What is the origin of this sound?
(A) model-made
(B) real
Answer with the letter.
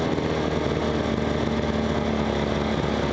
B